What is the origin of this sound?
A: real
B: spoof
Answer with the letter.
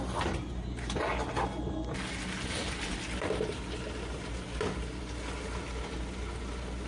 A